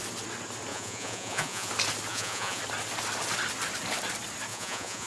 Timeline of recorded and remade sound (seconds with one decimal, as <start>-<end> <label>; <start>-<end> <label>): 0.0-0.7 recorded; 0.7-1.7 remade; 1.7-2.1 recorded; 2.1-2.6 remade; 2.6-4.5 recorded; 4.5-5.1 remade